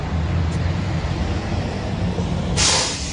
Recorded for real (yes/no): no